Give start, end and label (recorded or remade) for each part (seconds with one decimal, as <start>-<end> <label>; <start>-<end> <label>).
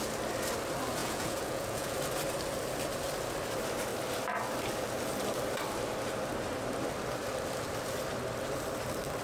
0.0-1.0 recorded; 1.0-2.0 remade; 2.0-9.2 recorded